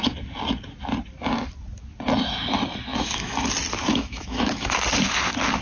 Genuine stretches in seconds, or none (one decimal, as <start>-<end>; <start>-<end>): 0.0-2.9; 3.5-3.9; 4.8-5.6

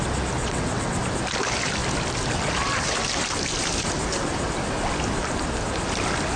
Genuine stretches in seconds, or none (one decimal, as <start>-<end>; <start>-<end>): 0.0-0.4; 1.0-6.4